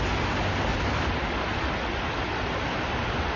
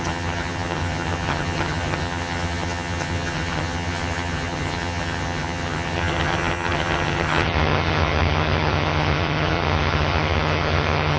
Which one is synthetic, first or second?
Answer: second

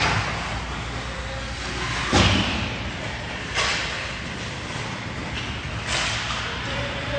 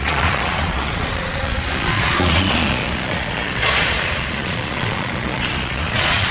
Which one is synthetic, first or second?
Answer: second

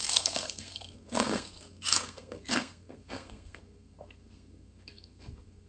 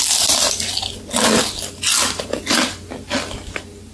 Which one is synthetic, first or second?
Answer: first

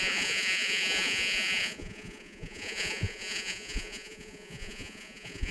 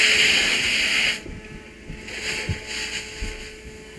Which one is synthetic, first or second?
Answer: first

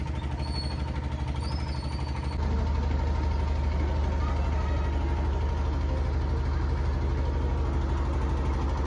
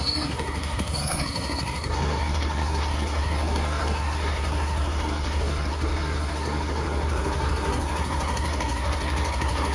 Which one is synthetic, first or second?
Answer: second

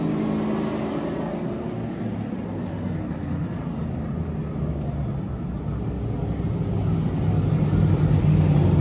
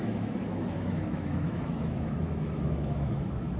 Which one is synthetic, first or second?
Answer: second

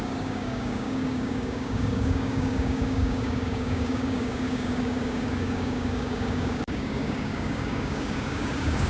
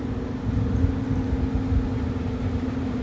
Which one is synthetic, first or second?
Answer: first